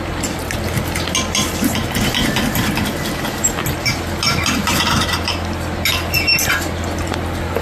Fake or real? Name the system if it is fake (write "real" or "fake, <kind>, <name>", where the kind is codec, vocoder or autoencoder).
real